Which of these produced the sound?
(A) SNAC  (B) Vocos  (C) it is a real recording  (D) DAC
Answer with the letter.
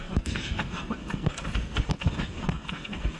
A